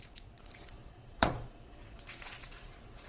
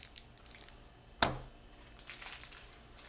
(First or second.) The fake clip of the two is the first